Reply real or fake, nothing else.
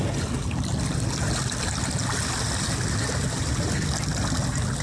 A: real